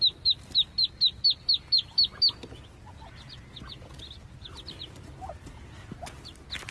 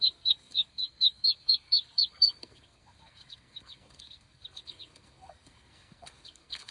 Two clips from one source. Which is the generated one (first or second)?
second